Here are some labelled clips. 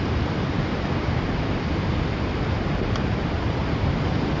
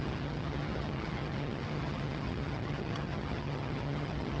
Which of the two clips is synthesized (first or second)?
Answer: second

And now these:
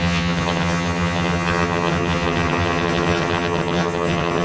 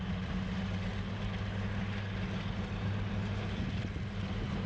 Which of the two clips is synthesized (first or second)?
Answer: first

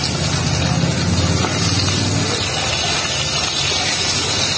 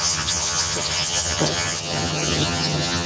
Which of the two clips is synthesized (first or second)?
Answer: second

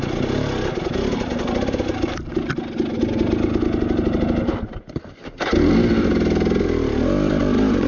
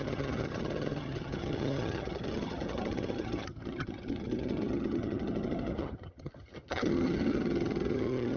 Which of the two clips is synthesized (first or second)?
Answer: second